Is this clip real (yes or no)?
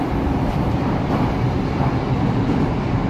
no